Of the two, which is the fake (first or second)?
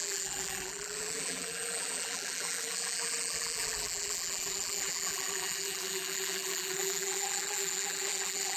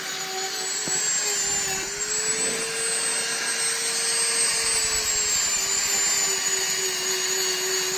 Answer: first